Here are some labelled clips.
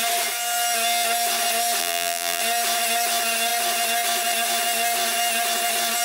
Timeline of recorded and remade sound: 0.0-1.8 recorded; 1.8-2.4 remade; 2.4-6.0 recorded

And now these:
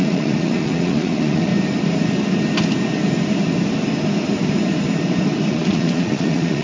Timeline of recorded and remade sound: 0.0-1.5 remade; 1.5-5.5 recorded; 5.5-6.6 remade